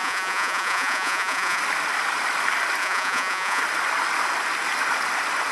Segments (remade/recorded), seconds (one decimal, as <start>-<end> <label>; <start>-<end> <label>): 0.0-1.6 remade; 1.6-2.8 recorded; 2.8-3.6 remade; 3.6-5.5 recorded